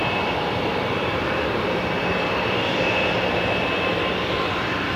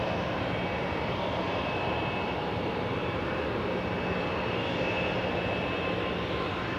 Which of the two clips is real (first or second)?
second